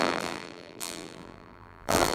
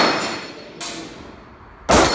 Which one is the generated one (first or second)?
first